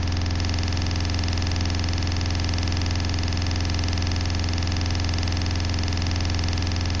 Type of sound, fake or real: real